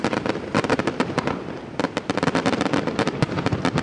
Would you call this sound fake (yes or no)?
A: yes